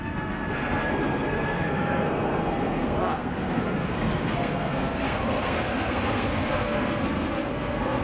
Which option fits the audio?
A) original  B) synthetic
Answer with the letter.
B